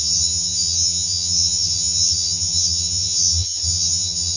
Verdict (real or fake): fake